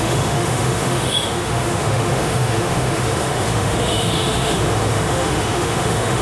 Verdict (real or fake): fake